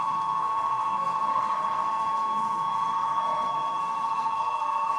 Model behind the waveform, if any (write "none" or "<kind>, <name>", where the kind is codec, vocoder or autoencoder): codec, SNAC